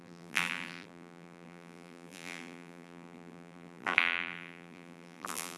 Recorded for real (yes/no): no